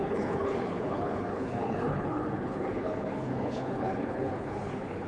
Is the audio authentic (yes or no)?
no